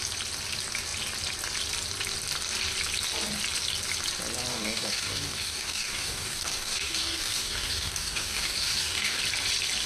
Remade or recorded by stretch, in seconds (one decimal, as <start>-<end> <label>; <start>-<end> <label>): 0.0-4.5 recorded; 4.5-9.2 remade; 9.2-9.9 recorded